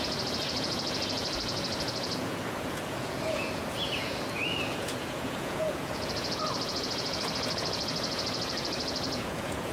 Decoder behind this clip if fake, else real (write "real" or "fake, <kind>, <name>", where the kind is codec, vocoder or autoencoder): fake, vocoder, Vocos